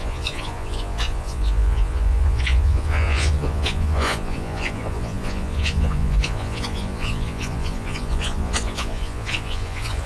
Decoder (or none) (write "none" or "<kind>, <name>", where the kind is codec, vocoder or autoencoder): vocoder, Vocos